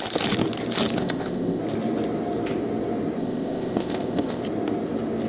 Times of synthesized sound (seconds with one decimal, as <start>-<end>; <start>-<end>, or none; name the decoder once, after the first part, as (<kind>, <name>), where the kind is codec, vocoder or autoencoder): 1.0-1.6 (codec, ZipCodec); 3.2-4.4

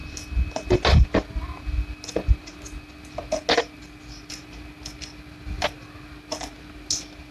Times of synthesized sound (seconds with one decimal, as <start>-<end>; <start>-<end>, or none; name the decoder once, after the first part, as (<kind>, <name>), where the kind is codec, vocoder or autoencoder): none